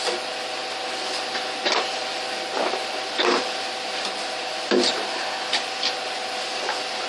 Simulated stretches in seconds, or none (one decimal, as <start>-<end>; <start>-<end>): none